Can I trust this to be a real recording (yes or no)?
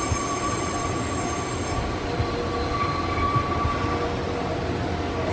yes